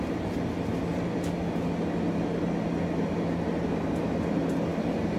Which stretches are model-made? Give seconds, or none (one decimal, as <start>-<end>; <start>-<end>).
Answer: none